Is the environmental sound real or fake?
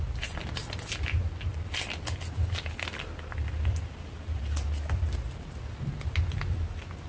real